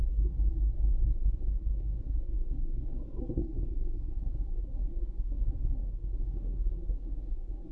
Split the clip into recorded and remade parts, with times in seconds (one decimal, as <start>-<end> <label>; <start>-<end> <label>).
0.0-7.7 remade